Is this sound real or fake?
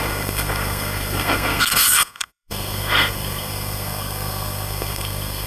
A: fake